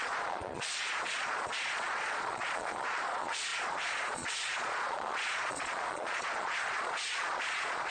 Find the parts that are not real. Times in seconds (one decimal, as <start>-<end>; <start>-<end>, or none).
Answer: 0.0-7.9